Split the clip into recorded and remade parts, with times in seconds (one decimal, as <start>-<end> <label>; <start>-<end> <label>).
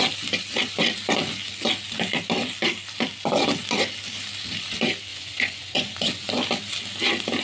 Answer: 0.0-5.1 recorded; 5.1-6.3 remade; 6.3-7.4 recorded